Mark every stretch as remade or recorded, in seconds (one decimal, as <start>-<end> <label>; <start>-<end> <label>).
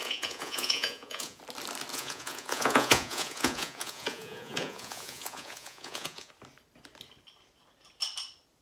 0.0-1.4 remade; 1.4-1.9 recorded; 1.9-6.3 remade; 6.3-8.6 recorded